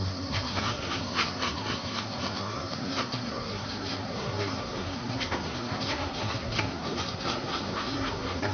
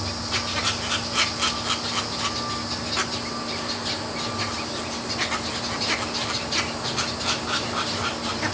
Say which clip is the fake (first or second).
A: first